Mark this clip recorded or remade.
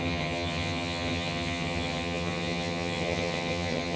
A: remade